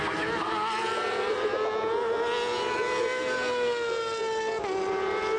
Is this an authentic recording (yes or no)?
yes